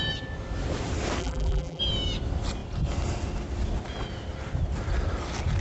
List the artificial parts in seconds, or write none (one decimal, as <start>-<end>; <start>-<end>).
1.2-1.8